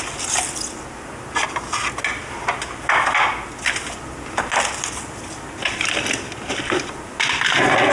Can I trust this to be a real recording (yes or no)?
yes